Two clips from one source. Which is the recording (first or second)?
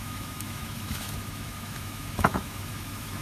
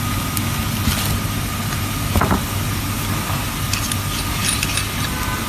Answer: second